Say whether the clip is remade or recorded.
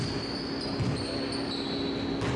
recorded